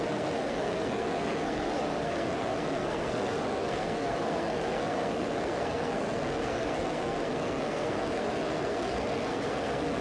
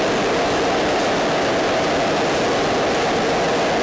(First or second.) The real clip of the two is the second